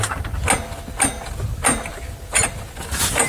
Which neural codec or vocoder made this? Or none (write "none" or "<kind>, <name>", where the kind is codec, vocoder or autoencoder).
none